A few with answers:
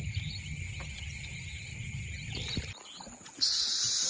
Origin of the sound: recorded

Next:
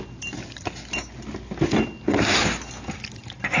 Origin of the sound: recorded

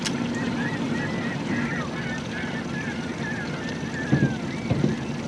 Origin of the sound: recorded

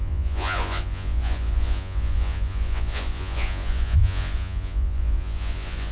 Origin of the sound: remade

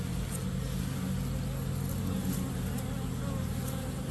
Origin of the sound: recorded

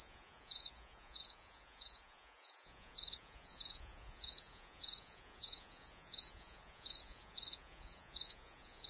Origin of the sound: remade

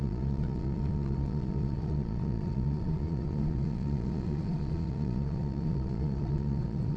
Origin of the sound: remade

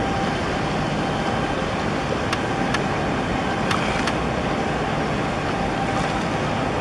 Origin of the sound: recorded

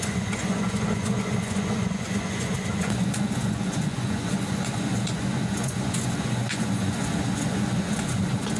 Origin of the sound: remade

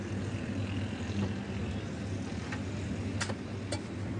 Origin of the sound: recorded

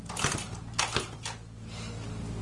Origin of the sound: recorded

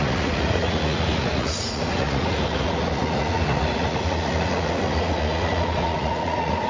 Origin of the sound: remade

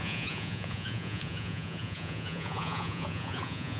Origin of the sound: remade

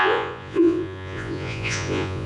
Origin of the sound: remade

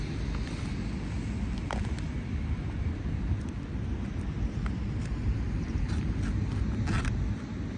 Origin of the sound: recorded